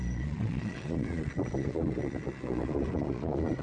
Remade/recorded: remade